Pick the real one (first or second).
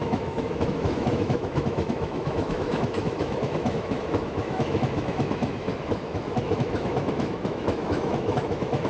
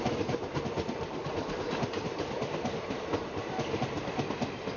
second